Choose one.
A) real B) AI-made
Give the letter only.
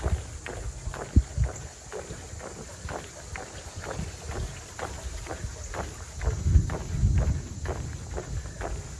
A